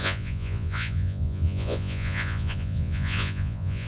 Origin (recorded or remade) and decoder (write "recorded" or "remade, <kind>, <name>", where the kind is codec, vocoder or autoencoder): remade, vocoder, Vocos